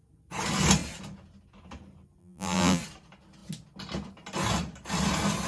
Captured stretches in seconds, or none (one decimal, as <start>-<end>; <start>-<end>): 0.0-2.2; 2.8-5.5